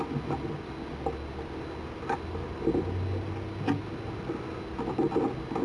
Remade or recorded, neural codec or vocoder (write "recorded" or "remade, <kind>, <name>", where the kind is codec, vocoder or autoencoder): recorded